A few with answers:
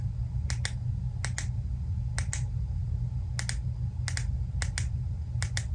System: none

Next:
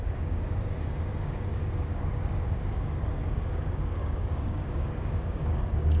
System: codec, DAC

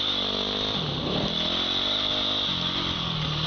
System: none